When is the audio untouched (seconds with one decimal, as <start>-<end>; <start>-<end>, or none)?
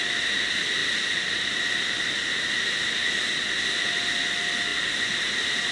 0.0-5.7